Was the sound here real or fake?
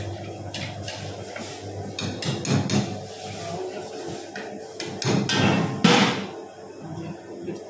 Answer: real